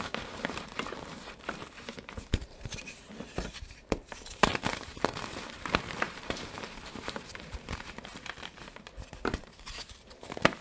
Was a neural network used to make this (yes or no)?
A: yes